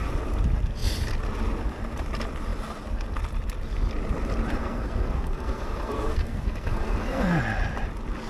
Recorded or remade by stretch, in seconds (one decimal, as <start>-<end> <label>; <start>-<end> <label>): 0.0-4.6 recorded; 4.6-7.4 remade; 7.4-8.3 recorded